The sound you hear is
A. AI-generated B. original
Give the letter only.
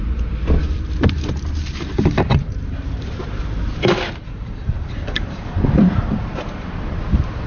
A